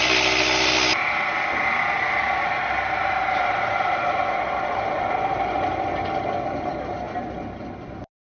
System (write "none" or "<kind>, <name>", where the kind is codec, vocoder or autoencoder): none